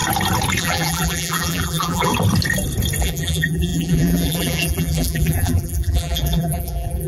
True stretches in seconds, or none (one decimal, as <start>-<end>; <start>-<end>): 0.0-0.6; 2.1-3.0